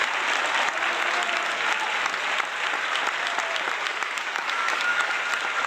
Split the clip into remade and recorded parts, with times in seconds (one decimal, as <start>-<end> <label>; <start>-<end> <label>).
0.0-3.9 recorded; 3.9-5.1 remade; 5.1-5.7 recorded